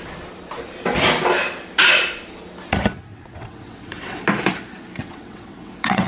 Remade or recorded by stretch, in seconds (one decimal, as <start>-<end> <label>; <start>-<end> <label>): 0.0-3.1 recorded; 3.1-4.2 remade; 4.2-5.0 recorded; 5.0-6.1 remade